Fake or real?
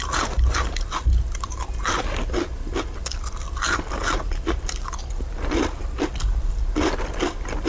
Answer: real